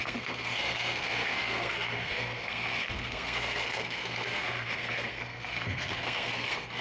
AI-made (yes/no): yes